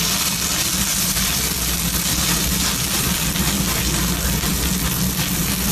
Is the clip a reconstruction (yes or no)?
no